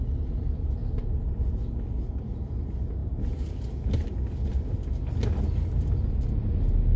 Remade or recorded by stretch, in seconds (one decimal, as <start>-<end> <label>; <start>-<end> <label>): 0.0-7.0 recorded